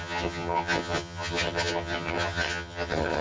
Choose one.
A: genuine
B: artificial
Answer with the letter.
B